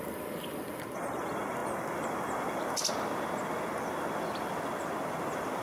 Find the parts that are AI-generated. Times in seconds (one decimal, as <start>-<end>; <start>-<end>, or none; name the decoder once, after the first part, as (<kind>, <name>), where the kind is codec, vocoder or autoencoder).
none